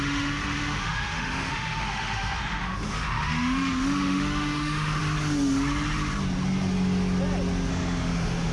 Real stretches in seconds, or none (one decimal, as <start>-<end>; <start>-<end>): 5.0-7.7